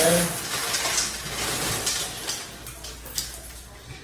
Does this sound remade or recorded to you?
recorded